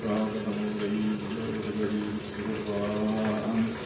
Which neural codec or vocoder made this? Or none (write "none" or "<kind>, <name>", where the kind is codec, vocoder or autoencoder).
none